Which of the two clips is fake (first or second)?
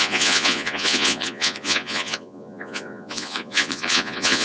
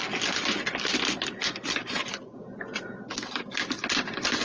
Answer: first